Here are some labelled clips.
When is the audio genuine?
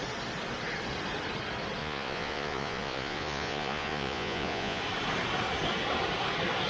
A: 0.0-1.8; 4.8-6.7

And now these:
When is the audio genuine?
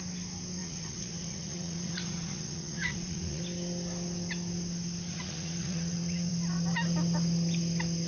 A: 0.0-0.6; 3.4-5.1; 6.3-8.1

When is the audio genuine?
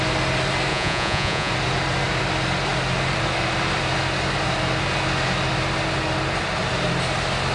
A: 0.0-0.7; 1.5-7.5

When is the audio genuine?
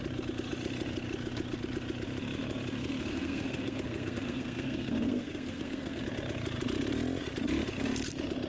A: 0.0-3.1; 6.0-8.5